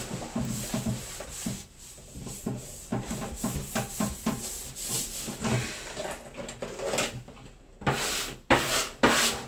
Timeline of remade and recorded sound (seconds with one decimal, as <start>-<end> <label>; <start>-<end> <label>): 0.0-2.9 remade; 2.9-7.6 recorded; 7.6-9.5 remade